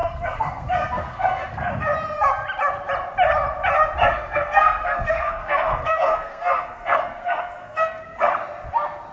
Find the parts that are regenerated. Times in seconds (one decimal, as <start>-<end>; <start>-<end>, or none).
0.0-1.7; 4.0-8.3